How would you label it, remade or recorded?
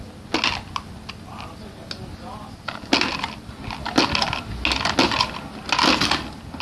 recorded